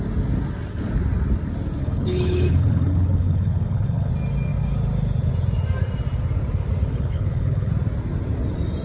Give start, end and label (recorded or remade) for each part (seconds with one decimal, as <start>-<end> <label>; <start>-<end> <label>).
0.0-1.8 recorded; 1.8-4.1 remade; 4.1-6.9 recorded; 6.9-7.7 remade; 7.7-8.8 recorded